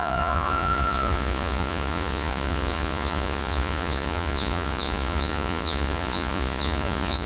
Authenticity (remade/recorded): remade